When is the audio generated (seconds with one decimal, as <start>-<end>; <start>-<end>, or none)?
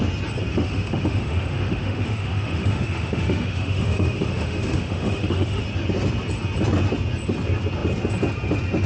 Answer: 0.5-5.6